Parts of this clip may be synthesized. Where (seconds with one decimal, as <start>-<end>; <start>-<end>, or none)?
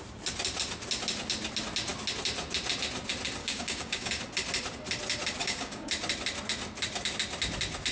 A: 3.4-4.2; 5.4-5.9